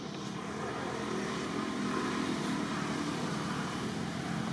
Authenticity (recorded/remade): remade